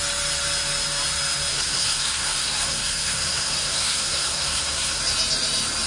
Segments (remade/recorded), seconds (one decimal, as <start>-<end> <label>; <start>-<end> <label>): 0.0-1.5 recorded; 1.5-5.0 remade; 5.0-5.9 recorded